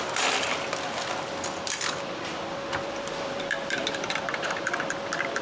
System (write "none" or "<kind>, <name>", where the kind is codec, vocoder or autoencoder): vocoder, BigVGAN v2